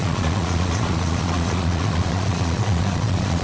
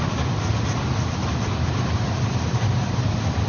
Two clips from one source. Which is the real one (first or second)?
second